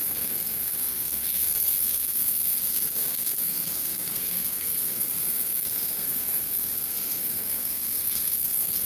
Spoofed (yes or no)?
yes